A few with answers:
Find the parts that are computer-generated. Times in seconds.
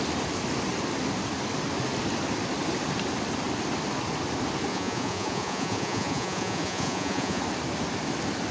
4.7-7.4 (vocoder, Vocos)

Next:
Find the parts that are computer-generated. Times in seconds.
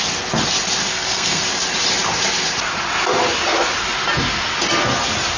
0.9-1.4 (codec, SNAC)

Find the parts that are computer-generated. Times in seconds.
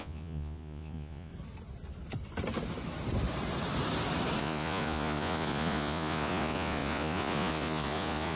0.0-1.3 (vocoder, Vocos); 4.4-8.4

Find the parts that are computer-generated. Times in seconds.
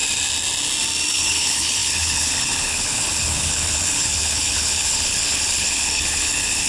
1.1-6.7 (codec, HILCodec)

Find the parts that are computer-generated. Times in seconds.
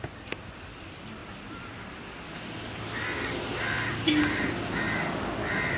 none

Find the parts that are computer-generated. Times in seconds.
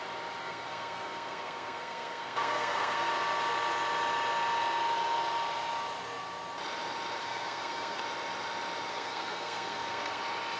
0.4-3.1 (codec, SNAC); 7.2-8.0; 8.9-10.2